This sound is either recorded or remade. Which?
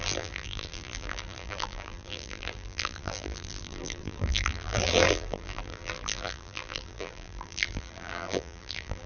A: remade